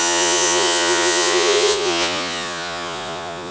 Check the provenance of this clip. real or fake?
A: fake